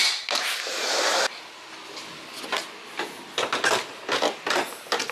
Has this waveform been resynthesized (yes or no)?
no